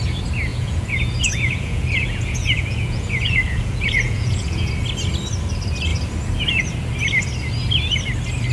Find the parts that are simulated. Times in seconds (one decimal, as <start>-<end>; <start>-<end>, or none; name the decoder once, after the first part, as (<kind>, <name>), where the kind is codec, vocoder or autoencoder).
0.5-4.7 (vocoder, Vocos)